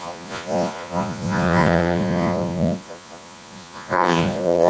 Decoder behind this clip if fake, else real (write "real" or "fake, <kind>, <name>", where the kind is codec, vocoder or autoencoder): fake, vocoder, Vocos